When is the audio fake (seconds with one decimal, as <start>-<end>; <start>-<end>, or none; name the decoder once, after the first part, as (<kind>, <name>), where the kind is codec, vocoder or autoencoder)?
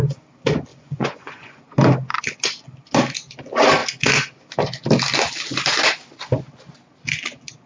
0.7-1.6 (vocoder, Vocos)